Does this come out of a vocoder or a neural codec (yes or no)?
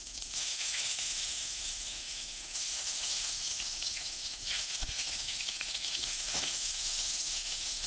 yes